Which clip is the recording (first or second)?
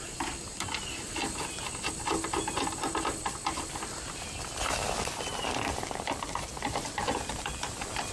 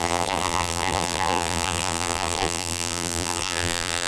first